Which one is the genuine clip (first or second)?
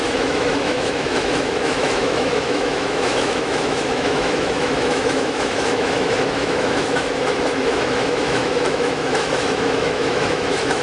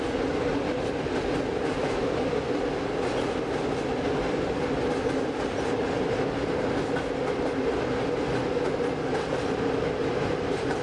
second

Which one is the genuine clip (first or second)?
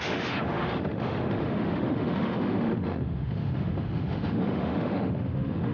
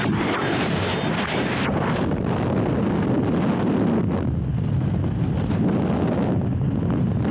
second